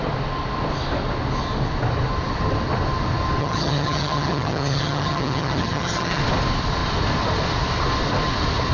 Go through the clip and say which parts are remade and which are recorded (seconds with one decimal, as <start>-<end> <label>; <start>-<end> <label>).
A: 0.0-3.4 recorded; 3.4-6.2 remade; 6.2-8.7 recorded

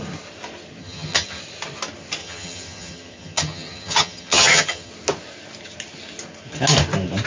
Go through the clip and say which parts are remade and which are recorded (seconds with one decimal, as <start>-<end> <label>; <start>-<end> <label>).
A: 0.0-0.8 recorded; 0.8-1.4 remade; 1.4-2.2 recorded; 2.2-4.9 remade; 4.9-7.3 recorded

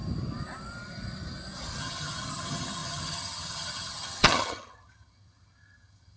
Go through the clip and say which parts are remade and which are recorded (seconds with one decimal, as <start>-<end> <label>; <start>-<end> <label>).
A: 0.0-1.8 recorded; 1.8-6.2 remade

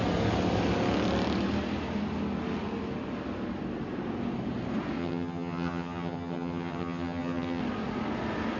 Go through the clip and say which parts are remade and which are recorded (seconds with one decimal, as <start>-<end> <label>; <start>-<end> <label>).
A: 0.0-5.0 recorded; 5.0-7.6 remade; 7.6-8.6 recorded